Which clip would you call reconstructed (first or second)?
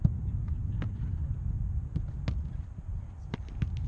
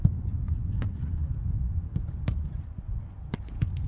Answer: second